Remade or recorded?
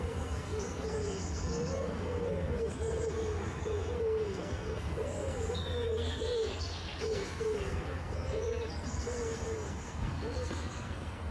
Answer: remade